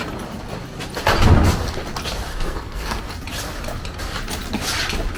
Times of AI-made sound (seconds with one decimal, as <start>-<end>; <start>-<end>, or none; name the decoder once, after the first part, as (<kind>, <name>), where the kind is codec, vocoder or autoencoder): 2.3-3.0 (codec, SNAC)